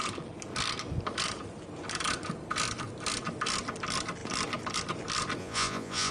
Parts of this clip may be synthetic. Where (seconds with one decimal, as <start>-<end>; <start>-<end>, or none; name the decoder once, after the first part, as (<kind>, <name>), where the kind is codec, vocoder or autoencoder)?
5.4-6.1 (vocoder, Vocos)